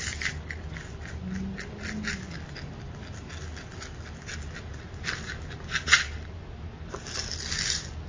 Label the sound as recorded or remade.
recorded